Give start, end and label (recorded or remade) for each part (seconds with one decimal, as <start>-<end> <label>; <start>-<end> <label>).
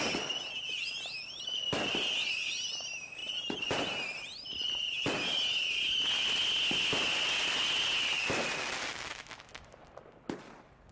0.0-10.9 recorded